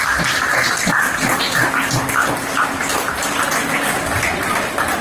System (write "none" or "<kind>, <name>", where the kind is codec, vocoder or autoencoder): none